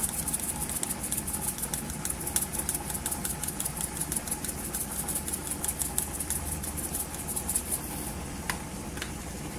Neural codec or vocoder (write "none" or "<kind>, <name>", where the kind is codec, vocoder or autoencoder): none